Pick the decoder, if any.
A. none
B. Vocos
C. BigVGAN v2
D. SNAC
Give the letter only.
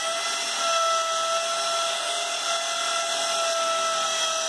A